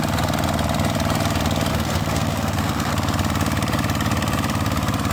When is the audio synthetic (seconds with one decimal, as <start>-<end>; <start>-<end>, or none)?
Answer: 1.7-2.9